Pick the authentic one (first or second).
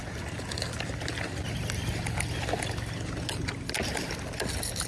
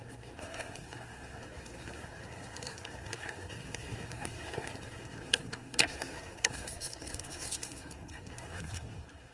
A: first